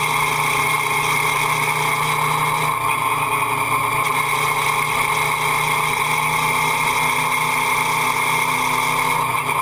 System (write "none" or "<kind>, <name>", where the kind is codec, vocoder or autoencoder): none